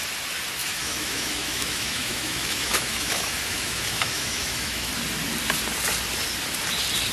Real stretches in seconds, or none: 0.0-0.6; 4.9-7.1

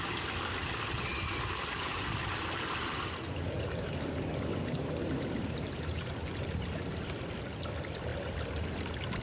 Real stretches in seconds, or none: 0.0-1.1; 6.1-9.2

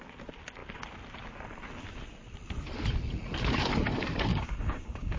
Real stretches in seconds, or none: 0.0-4.3

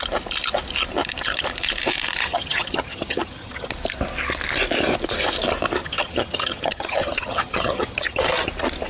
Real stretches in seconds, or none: 0.0-2.2; 3.7-5.8; 8.2-8.9

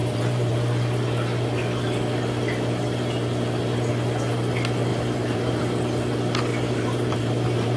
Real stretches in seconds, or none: 0.5-4.9; 5.6-6.5

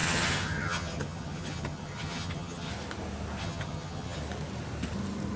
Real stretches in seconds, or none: 2.7-3.4; 4.2-5.4

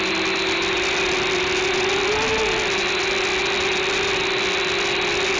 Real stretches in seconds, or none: 0.0-5.4

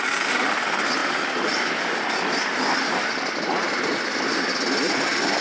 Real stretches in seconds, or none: 0.0-5.4